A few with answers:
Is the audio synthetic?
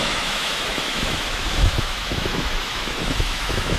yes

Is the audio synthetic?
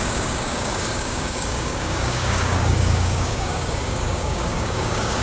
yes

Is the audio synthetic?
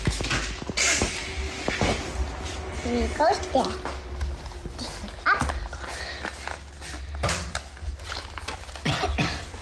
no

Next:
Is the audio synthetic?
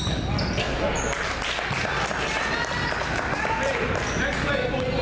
no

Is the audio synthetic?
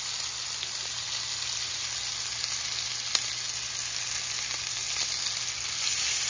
no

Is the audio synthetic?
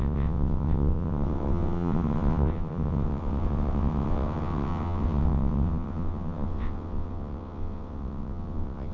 yes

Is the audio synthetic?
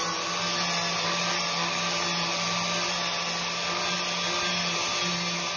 no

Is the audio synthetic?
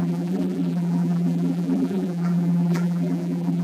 yes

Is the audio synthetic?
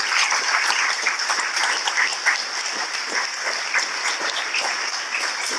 no